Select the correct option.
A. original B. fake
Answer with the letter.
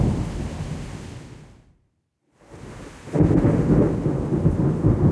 A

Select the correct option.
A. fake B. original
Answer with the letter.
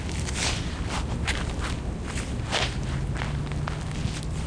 B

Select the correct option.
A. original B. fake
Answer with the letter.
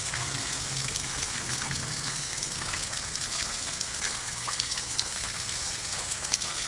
B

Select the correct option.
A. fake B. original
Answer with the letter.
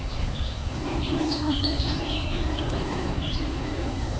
A